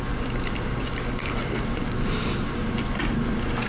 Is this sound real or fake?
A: real